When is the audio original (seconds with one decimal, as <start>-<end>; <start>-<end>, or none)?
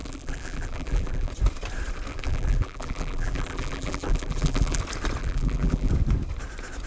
1.3-2.1; 4.8-5.2; 5.9-6.9